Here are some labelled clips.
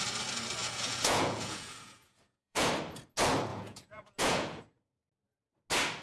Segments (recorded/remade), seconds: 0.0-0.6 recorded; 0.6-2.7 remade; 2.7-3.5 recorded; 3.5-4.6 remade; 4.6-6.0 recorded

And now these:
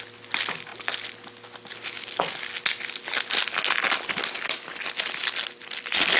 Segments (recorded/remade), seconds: 0.0-6.2 recorded

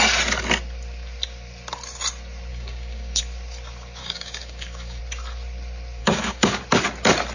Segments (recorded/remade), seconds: 0.0-2.5 recorded; 2.5-3.2 remade; 3.2-4.0 recorded; 4.0-5.0 remade; 5.0-6.0 recorded; 6.0-6.6 remade; 6.6-7.3 recorded

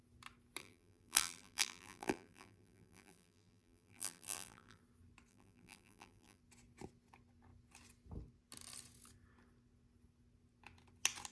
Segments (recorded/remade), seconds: 0.0-0.6 recorded; 0.6-4.8 remade; 4.8-5.3 recorded; 5.3-6.4 remade; 6.4-11.3 recorded

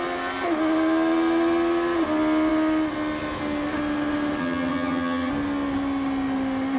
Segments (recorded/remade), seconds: 0.0-4.4 recorded; 4.4-5.3 remade; 5.3-6.8 recorded

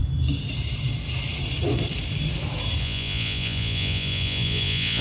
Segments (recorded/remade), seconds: 0.0-2.8 recorded; 2.8-5.0 remade